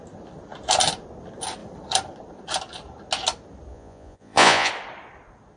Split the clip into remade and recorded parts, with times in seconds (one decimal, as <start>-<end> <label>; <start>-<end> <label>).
0.0-3.7 recorded; 3.7-4.7 remade; 4.7-5.6 recorded

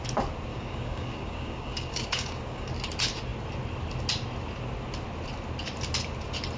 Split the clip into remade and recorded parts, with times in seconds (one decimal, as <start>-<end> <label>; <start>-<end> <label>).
0.0-0.5 recorded; 0.5-2.7 remade; 2.7-6.6 recorded

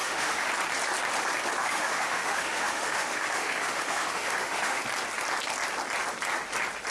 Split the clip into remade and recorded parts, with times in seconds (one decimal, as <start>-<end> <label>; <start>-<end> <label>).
0.0-0.5 remade; 0.5-1.6 recorded; 1.6-4.8 remade; 4.8-6.9 recorded

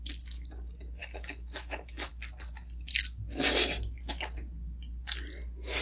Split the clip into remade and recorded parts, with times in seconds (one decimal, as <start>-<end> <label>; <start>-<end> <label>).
0.0-1.0 recorded; 1.0-2.1 remade; 2.1-5.8 recorded